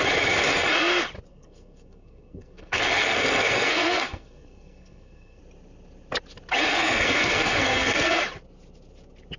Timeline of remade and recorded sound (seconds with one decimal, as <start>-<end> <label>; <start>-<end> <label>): 0.0-1.3 recorded; 1.3-5.4 remade; 5.4-6.7 recorded; 6.7-8.2 remade; 8.2-9.4 recorded